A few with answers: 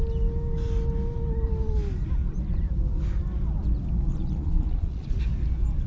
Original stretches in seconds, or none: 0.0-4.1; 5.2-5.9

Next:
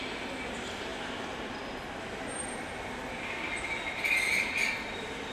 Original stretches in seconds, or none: 0.0-5.3

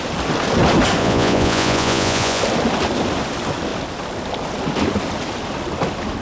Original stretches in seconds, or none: 0.0-1.0; 2.4-6.2

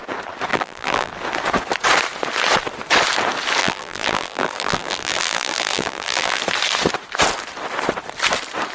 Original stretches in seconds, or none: 0.0-0.5; 1.1-3.6; 6.4-8.7